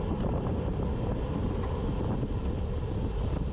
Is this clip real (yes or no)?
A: yes